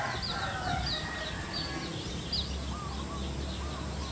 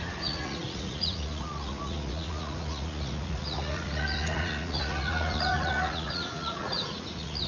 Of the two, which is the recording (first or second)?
first